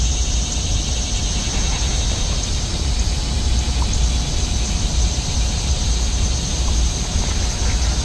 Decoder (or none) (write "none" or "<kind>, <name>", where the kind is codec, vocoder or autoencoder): none